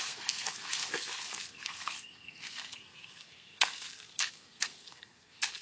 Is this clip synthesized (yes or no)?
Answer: yes